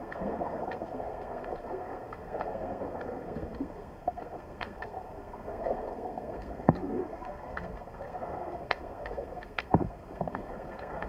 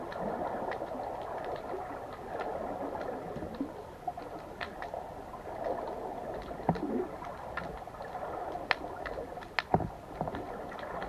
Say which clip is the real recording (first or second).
second